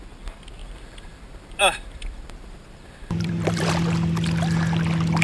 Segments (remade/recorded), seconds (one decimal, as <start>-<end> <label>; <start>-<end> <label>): 0.0-0.6 recorded; 0.6-3.7 remade; 3.7-5.2 recorded